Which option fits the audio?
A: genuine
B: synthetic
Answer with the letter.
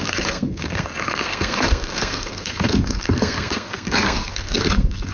B